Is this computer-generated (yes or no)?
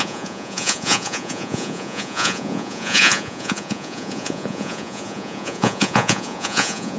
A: yes